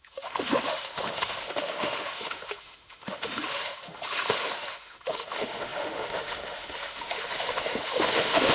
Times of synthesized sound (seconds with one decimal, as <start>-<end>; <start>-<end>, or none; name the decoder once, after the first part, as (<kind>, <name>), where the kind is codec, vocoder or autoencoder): 0.0-8.5 (autoencoder, DAC-VAE)